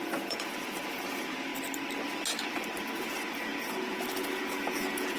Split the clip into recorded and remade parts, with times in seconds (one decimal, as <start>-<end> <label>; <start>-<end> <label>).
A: 0.0-1.5 remade; 1.5-3.0 recorded; 3.0-5.2 remade